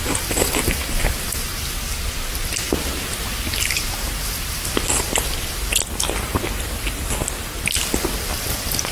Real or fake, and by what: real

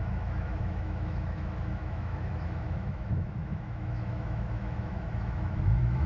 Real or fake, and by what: fake, autoencoder, DAC-VAE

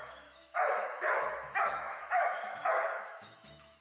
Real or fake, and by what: fake, autoencoder, DAC-VAE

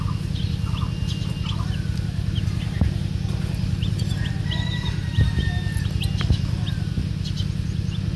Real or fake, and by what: real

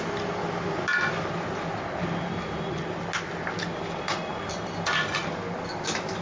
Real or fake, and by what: real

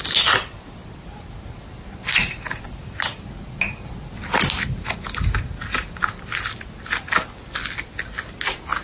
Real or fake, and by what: real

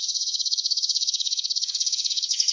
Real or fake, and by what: fake, autoencoder, DAC-VAE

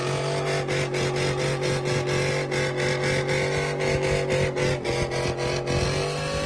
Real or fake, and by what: real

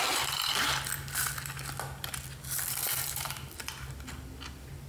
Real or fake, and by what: real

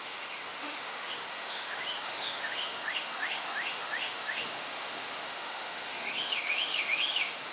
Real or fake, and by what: fake, autoencoder, DAC-VAE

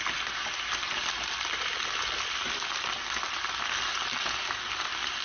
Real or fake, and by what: real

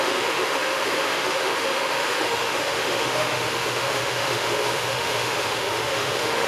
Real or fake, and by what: fake, autoencoder, DAC-VAE